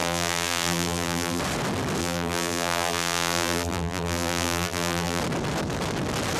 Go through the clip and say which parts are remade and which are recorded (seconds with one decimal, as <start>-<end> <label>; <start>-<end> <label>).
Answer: 0.0-1.4 remade; 1.4-2.0 recorded; 2.0-5.2 remade; 5.2-6.4 recorded